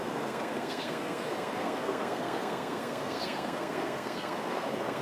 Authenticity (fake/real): fake